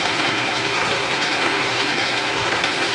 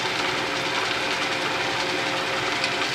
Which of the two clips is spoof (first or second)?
first